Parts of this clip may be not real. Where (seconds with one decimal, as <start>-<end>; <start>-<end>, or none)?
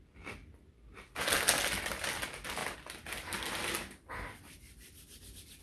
none